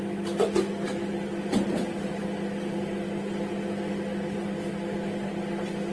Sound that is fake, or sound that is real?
real